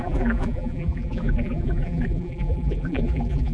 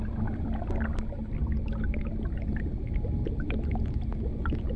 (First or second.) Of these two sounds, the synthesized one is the first